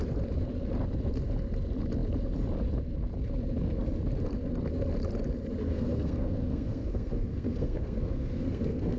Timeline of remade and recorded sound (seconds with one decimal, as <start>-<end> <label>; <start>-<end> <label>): 0.0-5.6 recorded; 5.6-9.0 remade